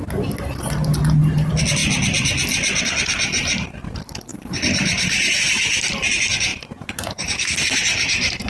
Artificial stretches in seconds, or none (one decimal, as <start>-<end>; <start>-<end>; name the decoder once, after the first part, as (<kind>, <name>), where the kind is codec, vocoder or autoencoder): 4.3-5.8 (vocoder, BigVGAN v2); 6.5-7.8

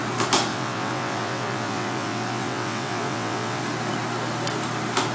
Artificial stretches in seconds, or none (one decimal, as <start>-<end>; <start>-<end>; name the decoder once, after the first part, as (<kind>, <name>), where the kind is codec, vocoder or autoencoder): 0.5-3.6 (vocoder, WaveNeXt)

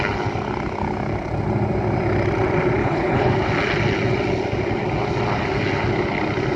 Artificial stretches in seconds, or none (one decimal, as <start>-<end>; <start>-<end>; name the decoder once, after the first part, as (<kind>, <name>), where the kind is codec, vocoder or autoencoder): 2.8-3.3 (codec, HILCodec)

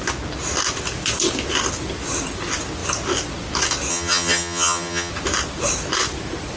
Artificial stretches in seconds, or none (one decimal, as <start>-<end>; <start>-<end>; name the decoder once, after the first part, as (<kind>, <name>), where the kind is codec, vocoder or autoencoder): 3.9-5.1 (vocoder, HiFi-GAN)

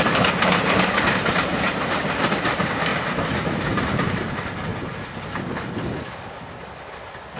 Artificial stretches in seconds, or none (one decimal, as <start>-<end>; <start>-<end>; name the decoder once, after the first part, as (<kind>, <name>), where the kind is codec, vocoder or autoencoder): 0.0-4.7 (vocoder, BigVGAN v2)

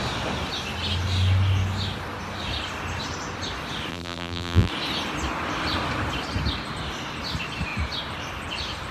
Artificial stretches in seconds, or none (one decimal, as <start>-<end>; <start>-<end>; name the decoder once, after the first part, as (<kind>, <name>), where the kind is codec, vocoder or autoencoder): 3.9-4.7 (vocoder, BigVGAN v2)